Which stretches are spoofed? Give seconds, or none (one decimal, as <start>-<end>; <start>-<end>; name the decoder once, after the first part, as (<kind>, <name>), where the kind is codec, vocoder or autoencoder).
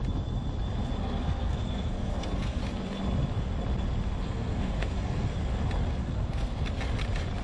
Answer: 1.0-2.6 (codec, SNAC); 4.2-5.3; 5.9-6.7